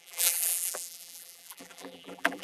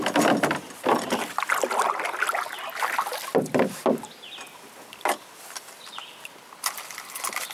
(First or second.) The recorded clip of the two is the second